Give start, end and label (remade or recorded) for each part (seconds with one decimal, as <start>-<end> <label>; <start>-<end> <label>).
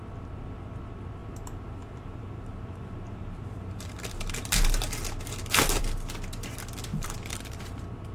0.0-1.2 recorded; 1.2-5.8 remade; 5.8-6.9 recorded; 6.9-7.6 remade; 7.6-8.1 recorded